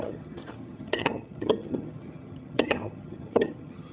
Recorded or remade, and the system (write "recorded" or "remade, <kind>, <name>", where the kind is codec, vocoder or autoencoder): remade, vocoder, HiFi-GAN